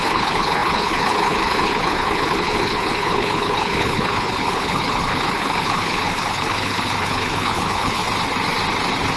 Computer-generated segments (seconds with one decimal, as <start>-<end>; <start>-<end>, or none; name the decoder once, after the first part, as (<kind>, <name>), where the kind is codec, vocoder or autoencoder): 0.0-8.0 (codec, HILCodec)